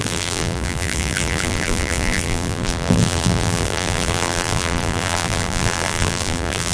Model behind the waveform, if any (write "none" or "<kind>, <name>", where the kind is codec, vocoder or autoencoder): vocoder, BigVGAN v2